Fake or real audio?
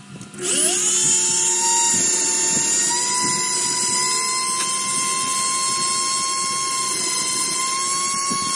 real